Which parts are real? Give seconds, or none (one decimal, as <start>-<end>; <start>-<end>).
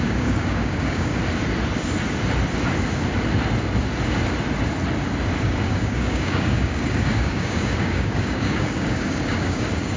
1.1-5.4